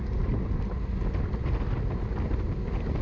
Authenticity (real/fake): real